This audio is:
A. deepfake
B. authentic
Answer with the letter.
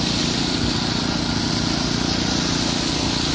B